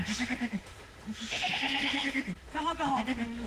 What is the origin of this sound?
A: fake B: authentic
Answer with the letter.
A